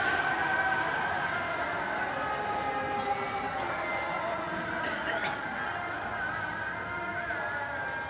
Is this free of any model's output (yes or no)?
yes